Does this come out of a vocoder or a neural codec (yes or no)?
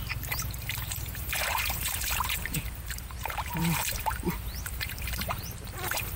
yes